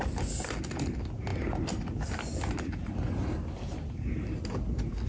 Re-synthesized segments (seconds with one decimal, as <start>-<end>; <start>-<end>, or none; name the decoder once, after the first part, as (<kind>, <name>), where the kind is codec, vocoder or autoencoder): none